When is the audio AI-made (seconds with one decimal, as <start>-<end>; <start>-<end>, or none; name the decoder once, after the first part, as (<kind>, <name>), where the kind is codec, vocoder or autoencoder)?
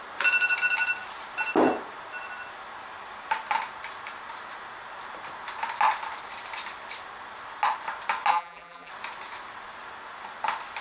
8.3-8.9 (vocoder, BigVGAN v2)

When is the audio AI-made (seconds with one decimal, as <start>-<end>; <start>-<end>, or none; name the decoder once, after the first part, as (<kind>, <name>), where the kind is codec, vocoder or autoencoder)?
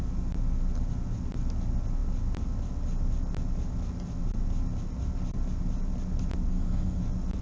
6.5-7.0 (codec, SNAC)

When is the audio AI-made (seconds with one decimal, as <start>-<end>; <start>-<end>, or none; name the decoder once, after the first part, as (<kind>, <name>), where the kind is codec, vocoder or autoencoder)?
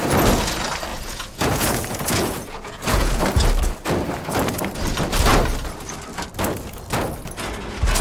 0.9-3.2 (vocoder, Vocos)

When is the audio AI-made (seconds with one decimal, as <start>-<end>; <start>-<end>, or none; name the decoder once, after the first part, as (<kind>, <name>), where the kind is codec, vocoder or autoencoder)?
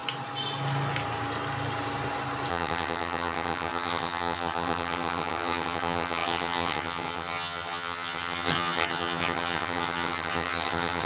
2.5-11.1 (vocoder, HiFi-GAN)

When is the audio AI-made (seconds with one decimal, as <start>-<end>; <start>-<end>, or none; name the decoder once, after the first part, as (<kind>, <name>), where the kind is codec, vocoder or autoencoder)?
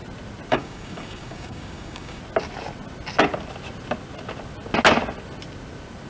0.5-2.2 (codec, DAC)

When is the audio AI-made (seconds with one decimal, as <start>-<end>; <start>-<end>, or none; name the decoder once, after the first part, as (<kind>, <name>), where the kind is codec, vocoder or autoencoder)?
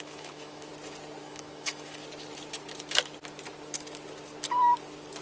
0.0-0.7 (autoencoder, DAC-VAE); 1.2-2.0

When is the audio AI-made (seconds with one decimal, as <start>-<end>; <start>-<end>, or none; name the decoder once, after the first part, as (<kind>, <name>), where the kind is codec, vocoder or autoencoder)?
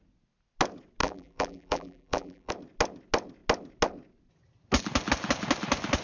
1.0-2.5 (vocoder, BigVGAN v2)